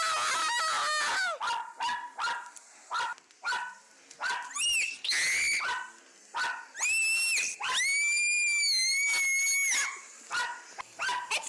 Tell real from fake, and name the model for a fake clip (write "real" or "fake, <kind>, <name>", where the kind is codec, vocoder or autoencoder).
real